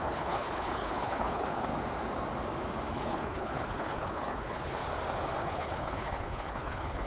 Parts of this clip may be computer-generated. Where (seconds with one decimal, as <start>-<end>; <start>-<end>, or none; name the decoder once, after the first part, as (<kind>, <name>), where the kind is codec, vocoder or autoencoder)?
0.0-1.7 (codec, HILCodec); 2.9-4.8; 5.4-7.1